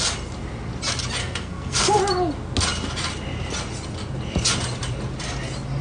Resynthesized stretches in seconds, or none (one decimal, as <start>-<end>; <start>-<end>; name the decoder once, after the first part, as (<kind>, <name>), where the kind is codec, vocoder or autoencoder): 1.2-2.0 (codec, SNAC)